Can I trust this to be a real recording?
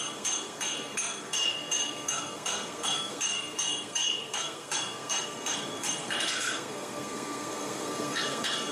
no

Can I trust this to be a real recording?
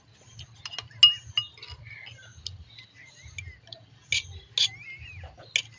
yes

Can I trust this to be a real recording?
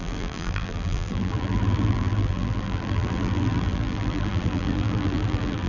no